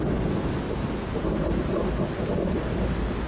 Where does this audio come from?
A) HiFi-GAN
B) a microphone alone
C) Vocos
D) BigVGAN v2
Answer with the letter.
B